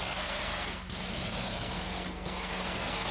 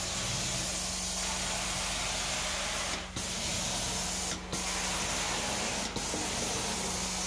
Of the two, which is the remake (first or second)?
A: first